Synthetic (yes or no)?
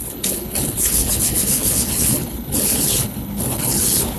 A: yes